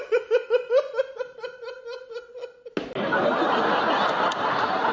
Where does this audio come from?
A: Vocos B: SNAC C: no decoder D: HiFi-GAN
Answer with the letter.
C